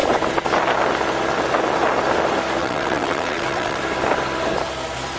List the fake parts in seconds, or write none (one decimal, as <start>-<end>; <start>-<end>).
2.6-3.8